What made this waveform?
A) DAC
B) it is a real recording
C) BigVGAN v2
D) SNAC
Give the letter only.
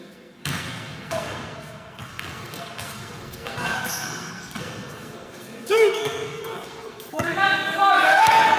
D